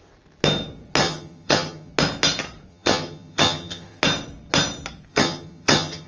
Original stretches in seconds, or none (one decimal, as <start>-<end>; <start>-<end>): 0.0-1.0; 1.9-2.7; 4.0-5.1